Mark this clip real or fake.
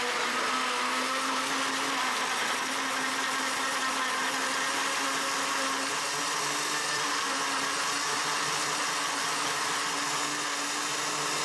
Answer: real